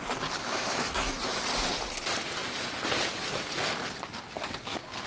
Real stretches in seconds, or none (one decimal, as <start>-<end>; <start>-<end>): 0.0-0.4; 1.4-5.1